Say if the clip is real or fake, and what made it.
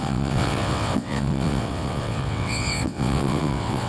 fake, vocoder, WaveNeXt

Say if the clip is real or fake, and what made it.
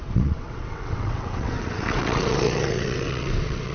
fake, vocoder, WaveNeXt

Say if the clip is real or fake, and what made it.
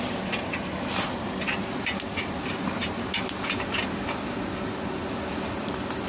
real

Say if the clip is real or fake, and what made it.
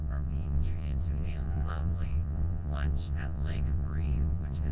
fake, vocoder, WaveNeXt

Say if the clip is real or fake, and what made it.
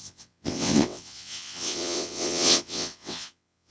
fake, vocoder, WaveNeXt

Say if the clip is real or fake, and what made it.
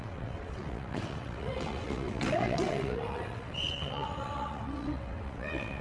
fake, vocoder, WaveNeXt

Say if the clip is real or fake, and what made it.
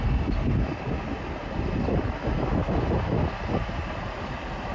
real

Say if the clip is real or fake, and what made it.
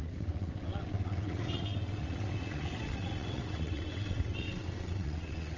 fake, vocoder, WaveNeXt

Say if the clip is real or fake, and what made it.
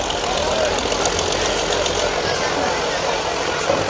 real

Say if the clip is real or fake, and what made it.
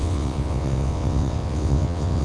fake, vocoder, WaveNeXt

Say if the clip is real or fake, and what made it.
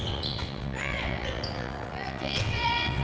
fake, vocoder, WaveNeXt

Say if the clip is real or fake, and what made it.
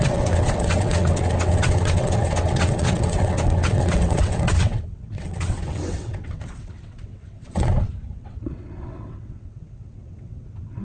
fake, vocoder, WaveNeXt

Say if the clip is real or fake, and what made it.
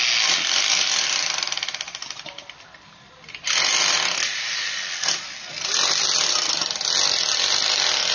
real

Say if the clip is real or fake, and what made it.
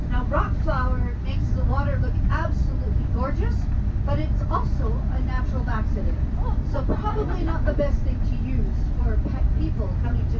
real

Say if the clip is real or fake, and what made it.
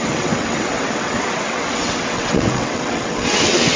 fake, vocoder, WaveNeXt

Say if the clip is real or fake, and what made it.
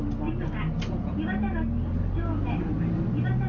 real